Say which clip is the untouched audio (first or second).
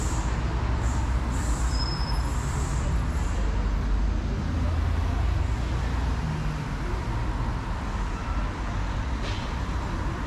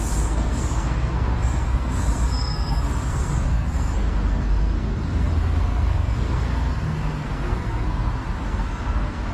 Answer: first